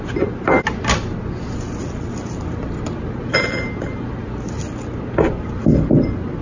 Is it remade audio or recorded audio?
recorded